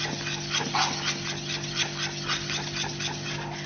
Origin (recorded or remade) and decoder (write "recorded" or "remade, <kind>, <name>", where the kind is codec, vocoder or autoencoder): recorded